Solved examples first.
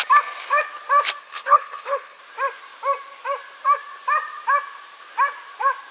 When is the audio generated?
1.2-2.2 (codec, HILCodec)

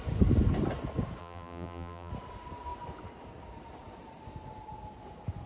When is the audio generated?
1.2-2.1 (vocoder, BigVGAN v2)

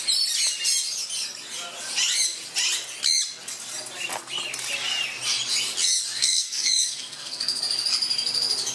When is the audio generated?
6.2-7.6 (codec, SNAC)

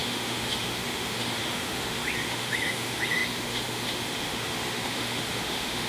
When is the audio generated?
0.0-5.9 (autoencoder, DAC-VAE)

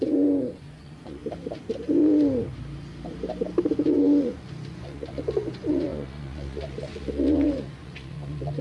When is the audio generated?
0.0-1.2 (vocoder, Vocos); 3.7-8.6

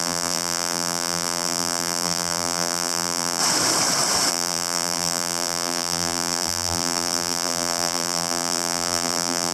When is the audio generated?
0.0-3.4 (vocoder, BigVGAN v2); 4.3-9.5